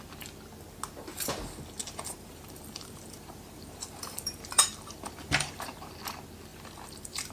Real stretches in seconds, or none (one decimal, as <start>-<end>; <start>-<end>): 0.0-1.8; 5.9-6.5